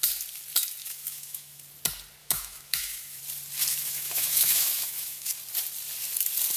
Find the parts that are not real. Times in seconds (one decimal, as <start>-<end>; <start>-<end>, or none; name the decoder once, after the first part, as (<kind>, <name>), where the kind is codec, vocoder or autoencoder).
0.8-1.6 (autoencoder, DAC-VAE); 2.2-3.2; 3.7-5.3